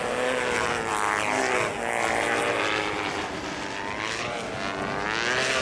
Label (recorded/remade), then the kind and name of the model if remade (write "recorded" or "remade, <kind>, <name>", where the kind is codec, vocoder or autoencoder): recorded